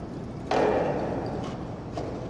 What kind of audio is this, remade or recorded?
recorded